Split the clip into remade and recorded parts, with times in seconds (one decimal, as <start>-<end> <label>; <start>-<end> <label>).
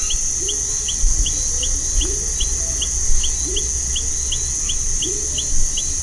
0.0-6.0 recorded